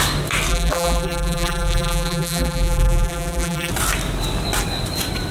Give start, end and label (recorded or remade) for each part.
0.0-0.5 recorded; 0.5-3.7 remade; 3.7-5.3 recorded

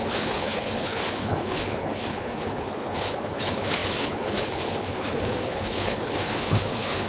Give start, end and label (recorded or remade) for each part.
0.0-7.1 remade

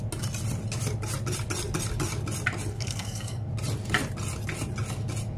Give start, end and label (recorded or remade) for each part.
0.0-2.7 recorded; 2.7-3.5 remade; 3.5-5.4 recorded

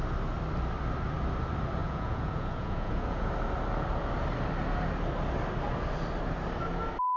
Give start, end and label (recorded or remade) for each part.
0.0-1.8 recorded; 1.8-3.3 remade; 3.3-7.2 recorded

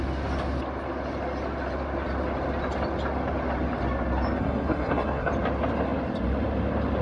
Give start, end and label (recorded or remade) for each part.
0.0-4.4 recorded; 4.4-5.3 remade; 5.3-7.0 recorded

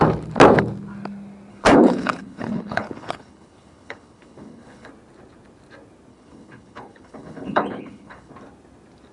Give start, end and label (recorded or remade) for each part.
0.0-1.5 recorded; 1.5-4.9 remade; 4.9-6.1 recorded; 6.1-8.3 remade; 8.3-9.1 recorded